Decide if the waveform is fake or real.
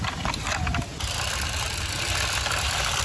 real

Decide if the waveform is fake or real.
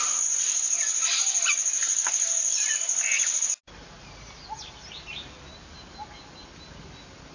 real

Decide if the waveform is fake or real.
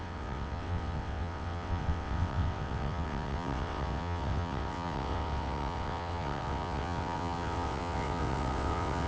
fake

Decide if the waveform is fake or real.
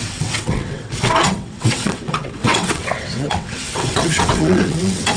fake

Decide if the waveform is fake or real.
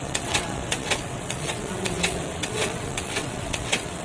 fake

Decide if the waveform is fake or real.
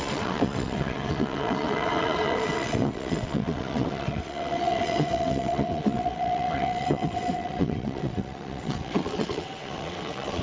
fake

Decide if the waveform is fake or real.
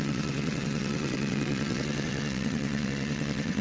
fake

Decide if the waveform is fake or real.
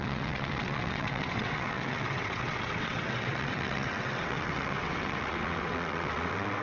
fake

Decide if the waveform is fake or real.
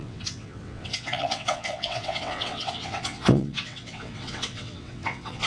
fake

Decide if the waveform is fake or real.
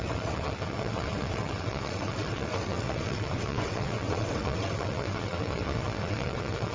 fake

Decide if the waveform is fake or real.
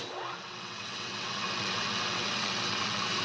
fake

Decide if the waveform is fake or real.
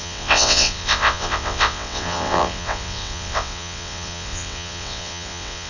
fake